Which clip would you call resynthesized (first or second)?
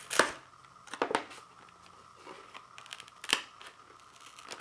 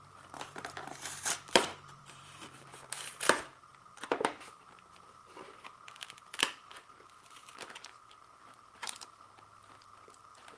second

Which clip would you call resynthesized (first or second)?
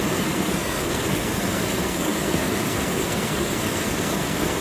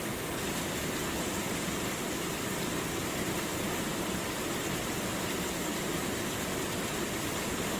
first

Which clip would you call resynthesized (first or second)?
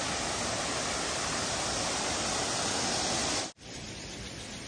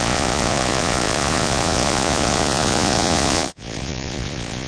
second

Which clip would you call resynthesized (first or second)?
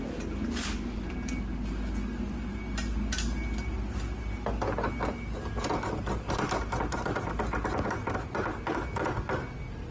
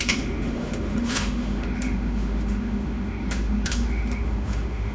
second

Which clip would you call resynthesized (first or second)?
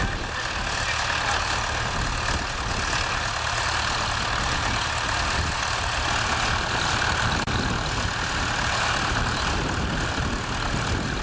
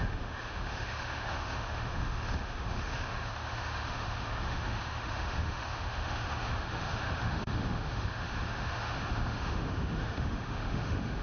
second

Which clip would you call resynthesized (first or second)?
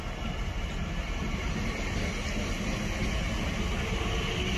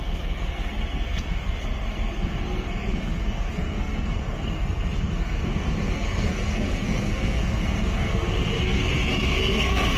second